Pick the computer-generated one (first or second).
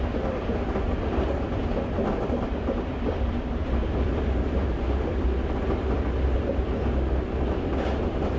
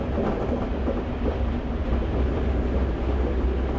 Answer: first